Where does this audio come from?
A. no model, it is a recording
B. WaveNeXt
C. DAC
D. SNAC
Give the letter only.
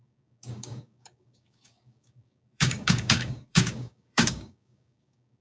C